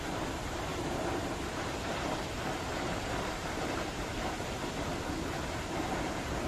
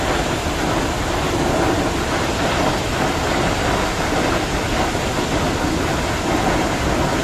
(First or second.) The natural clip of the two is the second